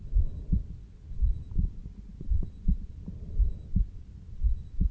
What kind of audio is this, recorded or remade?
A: recorded